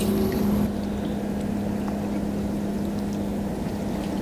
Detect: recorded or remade recorded